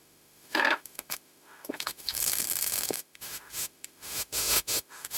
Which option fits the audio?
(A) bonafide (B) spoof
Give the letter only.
B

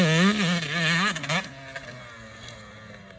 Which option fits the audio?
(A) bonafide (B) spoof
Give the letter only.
A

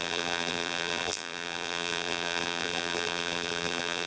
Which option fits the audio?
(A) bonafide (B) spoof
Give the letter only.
B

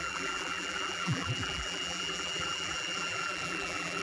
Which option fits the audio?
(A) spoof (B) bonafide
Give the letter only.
A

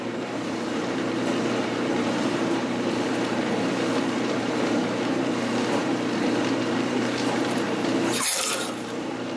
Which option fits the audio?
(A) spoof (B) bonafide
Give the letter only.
A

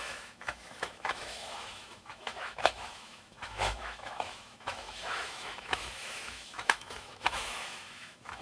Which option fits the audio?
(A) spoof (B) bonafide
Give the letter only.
A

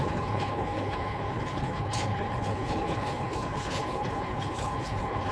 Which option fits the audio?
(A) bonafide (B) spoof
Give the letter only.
B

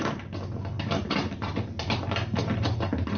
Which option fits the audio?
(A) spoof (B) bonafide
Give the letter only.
B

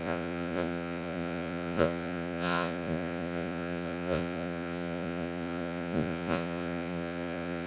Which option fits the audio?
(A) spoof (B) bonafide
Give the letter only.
A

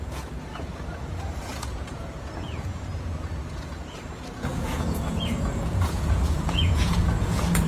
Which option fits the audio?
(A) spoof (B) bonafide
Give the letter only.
A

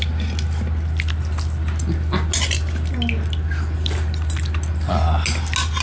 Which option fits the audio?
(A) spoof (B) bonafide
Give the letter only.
B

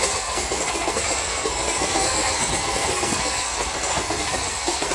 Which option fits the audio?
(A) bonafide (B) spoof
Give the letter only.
B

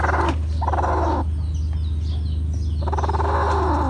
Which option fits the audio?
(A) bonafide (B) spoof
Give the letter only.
A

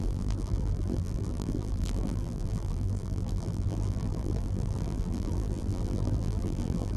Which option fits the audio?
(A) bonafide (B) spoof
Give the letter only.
B